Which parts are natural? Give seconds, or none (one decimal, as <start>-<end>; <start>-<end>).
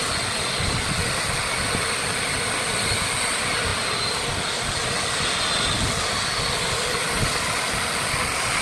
0.0-8.6